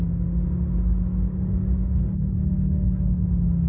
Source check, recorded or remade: recorded